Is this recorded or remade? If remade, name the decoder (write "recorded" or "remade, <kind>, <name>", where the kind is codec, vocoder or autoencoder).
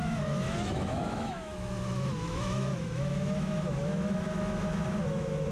remade, autoencoder, DAC-VAE